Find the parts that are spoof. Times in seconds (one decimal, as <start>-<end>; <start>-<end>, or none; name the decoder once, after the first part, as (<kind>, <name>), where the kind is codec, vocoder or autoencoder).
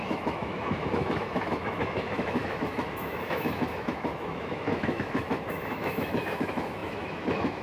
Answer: 0.0-7.6 (autoencoder, DAC-VAE)